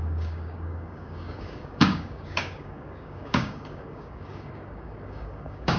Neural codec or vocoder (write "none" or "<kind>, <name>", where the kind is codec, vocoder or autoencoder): codec, DAC